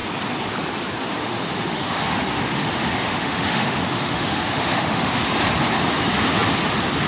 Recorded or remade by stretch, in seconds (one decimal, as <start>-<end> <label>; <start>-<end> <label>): 0.0-1.0 recorded; 1.0-5.3 remade; 5.3-7.1 recorded